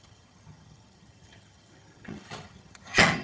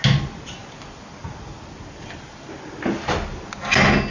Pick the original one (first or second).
second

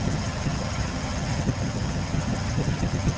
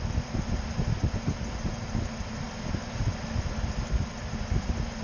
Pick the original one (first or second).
second